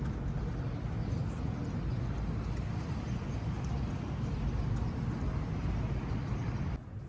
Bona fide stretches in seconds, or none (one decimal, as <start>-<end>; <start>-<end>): 0.0-7.1